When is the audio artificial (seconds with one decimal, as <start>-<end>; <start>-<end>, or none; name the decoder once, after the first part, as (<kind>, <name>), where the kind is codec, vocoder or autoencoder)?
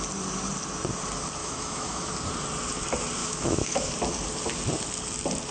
1.4-2.1 (autoencoder, DAC-VAE); 3.2-3.9